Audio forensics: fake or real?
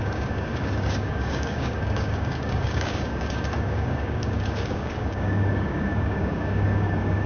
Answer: fake